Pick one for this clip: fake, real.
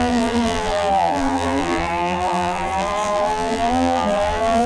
fake